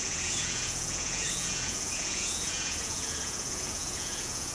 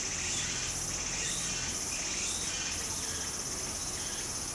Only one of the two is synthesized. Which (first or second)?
first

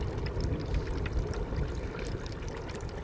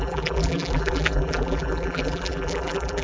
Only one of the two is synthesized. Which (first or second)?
second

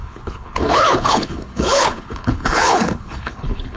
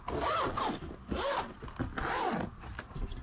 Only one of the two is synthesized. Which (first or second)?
first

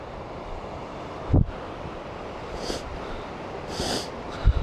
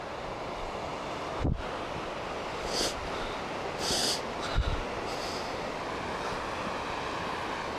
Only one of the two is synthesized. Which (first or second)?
first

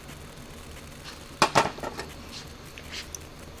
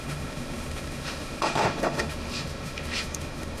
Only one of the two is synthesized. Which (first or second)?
second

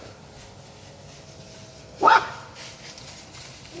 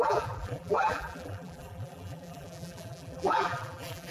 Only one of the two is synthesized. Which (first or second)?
second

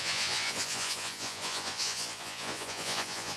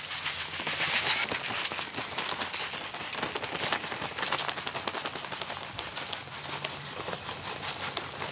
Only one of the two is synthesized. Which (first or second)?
first